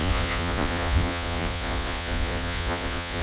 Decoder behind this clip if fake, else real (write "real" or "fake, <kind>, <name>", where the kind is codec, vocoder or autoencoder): fake, vocoder, Vocos